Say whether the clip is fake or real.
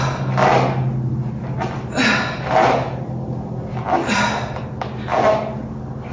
real